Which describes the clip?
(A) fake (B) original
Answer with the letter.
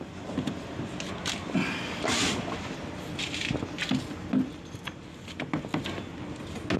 B